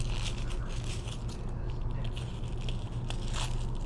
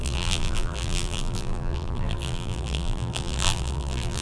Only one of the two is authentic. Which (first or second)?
first